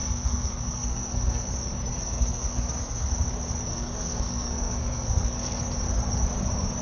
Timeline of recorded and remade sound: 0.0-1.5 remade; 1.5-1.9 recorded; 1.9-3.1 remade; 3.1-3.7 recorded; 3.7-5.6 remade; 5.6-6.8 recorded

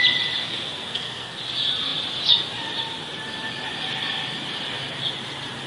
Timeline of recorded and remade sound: 0.0-0.4 recorded; 0.4-1.4 remade; 1.4-5.7 recorded